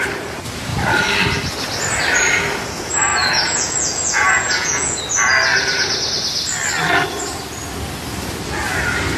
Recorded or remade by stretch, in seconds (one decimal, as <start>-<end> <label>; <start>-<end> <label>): 0.0-3.1 recorded; 3.1-5.0 remade; 5.0-9.2 recorded